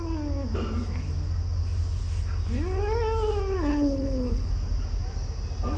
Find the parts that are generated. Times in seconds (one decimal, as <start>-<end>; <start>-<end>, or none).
3.7-4.5